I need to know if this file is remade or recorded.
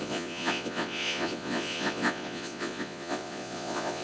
remade